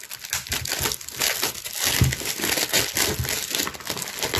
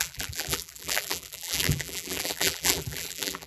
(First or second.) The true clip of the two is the first